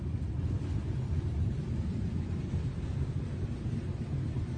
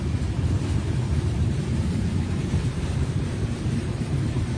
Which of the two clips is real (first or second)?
first